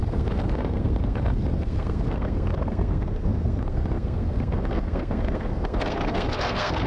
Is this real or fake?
fake